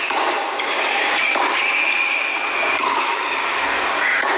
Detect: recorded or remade remade